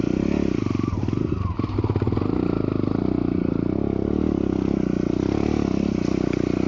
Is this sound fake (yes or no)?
no